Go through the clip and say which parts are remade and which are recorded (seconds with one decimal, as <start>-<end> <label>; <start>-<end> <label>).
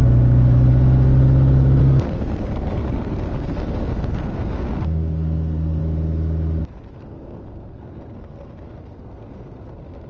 0.0-1.8 recorded; 1.8-5.8 remade; 5.8-6.6 recorded; 6.6-10.1 remade